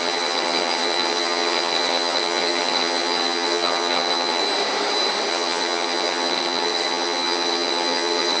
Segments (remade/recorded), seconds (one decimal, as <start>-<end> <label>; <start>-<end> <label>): 0.0-4.4 remade; 4.4-5.3 recorded; 5.3-8.4 remade